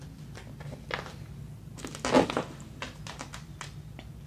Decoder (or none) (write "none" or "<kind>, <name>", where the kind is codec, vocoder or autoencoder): none